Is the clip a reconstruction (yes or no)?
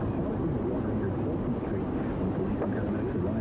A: no